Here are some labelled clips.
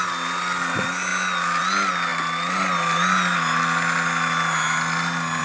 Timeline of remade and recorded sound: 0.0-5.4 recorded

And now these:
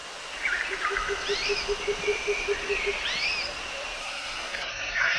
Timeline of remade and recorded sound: 0.0-4.0 recorded; 4.0-5.2 remade

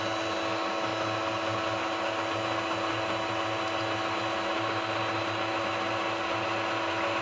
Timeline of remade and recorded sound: 0.0-7.2 recorded

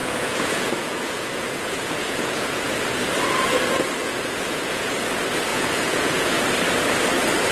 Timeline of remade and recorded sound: 0.0-2.7 remade; 2.7-4.0 recorded; 4.0-4.9 remade; 4.9-5.5 recorded; 5.5-6.4 remade; 6.4-7.5 recorded